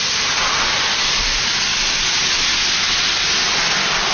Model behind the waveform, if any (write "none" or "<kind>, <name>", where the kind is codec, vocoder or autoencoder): none